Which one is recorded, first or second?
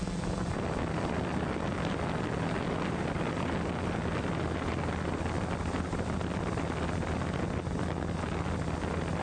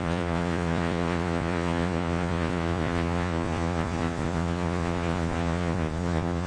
first